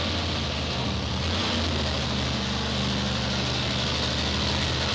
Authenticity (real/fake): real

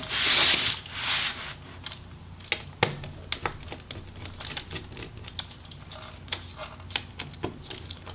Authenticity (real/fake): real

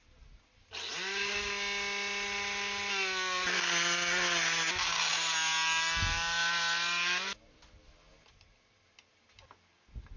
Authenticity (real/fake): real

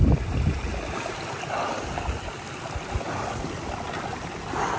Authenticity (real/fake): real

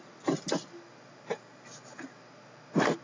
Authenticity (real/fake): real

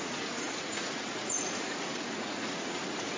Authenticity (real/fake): fake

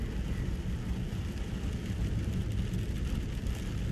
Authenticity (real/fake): real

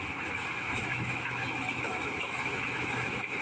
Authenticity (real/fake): fake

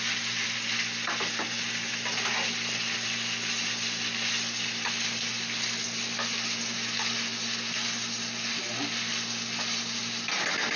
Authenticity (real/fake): real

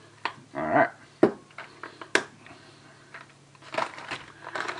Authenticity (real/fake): real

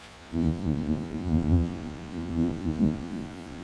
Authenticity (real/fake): fake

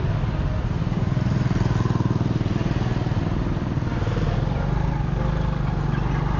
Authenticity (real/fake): real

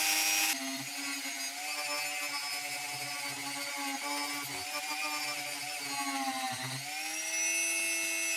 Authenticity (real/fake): real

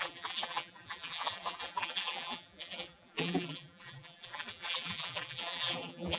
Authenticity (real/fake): fake